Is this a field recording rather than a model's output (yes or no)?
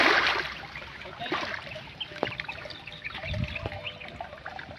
yes